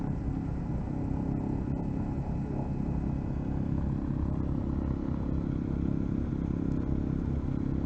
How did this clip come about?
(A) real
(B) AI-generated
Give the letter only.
A